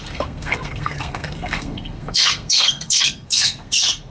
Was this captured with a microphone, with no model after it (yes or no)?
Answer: no